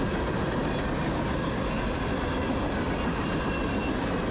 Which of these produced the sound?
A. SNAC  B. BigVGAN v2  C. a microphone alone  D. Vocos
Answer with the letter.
C